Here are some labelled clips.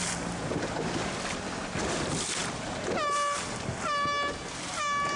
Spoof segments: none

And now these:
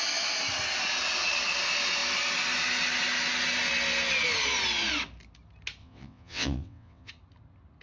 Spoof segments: 5.8-7.1 (vocoder, WaveNeXt)

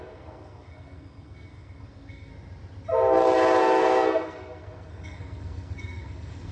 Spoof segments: 0.0-2.3 (codec, SNAC); 3.6-6.5

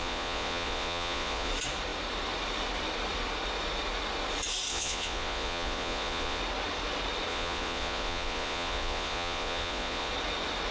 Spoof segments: 0.0-1.5 (vocoder, Vocos); 4.7-6.4; 7.3-10.1

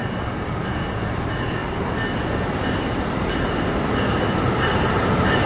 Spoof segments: 0.0-1.6 (vocoder, BigVGAN v2); 4.4-5.5

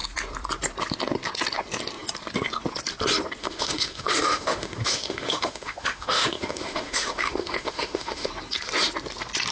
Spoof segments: 3.4-8.3 (autoencoder, DAC-VAE)

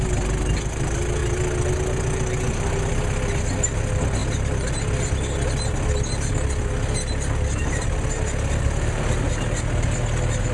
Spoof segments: none

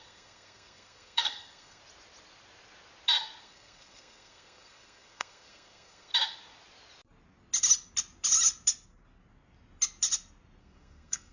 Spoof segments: 0.0-1.8 (codec, SNAC); 3.4-6.1; 10.6-11.3